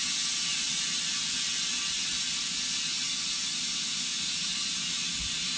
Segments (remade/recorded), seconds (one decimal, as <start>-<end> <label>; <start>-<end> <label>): 0.0-0.5 recorded; 0.5-3.6 remade; 3.6-5.6 recorded